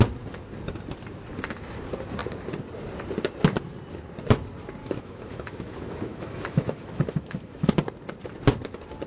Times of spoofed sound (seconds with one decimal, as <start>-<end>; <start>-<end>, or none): 4.8-7.7